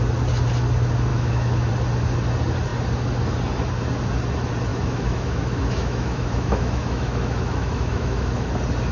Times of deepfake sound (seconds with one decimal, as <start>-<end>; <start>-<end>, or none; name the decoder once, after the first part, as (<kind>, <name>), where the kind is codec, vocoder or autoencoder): 1.1-1.7 (autoencoder, DAC-VAE); 4.7-8.5